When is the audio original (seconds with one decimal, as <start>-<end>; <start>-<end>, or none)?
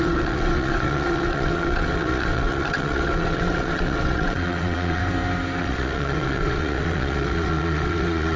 5.0-5.6